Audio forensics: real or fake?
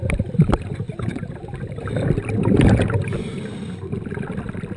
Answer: real